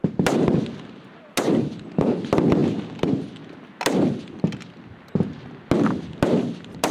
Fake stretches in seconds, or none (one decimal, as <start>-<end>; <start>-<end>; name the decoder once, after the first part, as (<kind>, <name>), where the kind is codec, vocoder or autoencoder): none

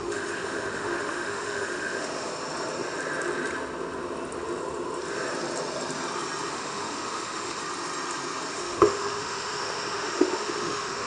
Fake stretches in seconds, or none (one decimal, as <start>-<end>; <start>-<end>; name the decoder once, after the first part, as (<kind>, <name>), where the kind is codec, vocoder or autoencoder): 0.0-2.3 (autoencoder, DAC-VAE); 6.5-7.6; 8.5-11.1